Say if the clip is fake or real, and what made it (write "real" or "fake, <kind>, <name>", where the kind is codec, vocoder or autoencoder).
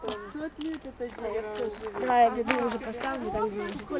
real